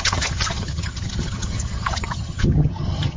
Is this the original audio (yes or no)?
no